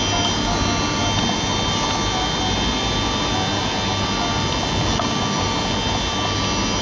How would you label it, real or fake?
real